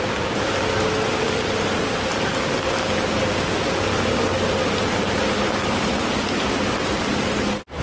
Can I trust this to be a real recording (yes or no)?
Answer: yes